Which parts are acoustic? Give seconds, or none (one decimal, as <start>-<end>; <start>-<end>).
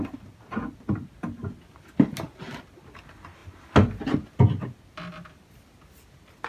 0.0-6.5